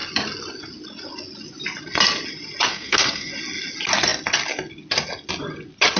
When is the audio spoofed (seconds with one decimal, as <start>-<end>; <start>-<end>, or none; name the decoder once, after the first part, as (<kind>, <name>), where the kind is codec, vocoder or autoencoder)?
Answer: 2.7-3.3 (codec, SNAC)